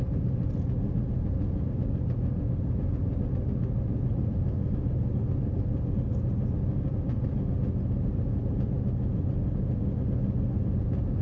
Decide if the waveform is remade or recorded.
recorded